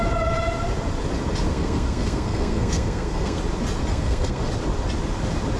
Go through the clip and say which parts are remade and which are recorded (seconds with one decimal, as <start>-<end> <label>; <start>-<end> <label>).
0.0-1.5 recorded; 1.5-3.4 remade; 3.4-3.9 recorded; 3.9-4.4 remade; 4.4-5.6 recorded

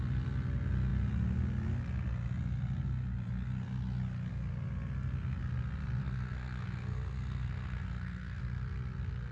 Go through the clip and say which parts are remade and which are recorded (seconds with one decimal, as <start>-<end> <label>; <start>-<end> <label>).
0.0-6.0 recorded; 6.0-8.4 remade; 8.4-9.3 recorded

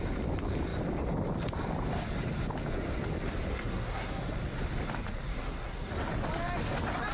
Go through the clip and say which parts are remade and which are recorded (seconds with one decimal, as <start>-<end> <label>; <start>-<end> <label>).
0.0-3.5 recorded; 3.5-4.2 remade; 4.2-5.3 recorded; 5.3-5.9 remade; 5.9-7.1 recorded

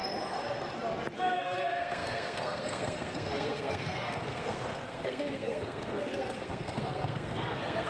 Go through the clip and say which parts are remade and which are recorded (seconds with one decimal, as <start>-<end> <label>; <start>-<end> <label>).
0.0-1.2 recorded; 1.2-7.9 remade

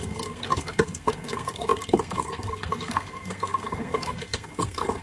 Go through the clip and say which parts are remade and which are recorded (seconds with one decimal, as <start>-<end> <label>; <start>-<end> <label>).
0.0-5.0 remade

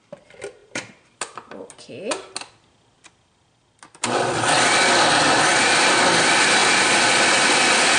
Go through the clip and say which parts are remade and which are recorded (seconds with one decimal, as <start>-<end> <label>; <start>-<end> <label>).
0.0-8.0 recorded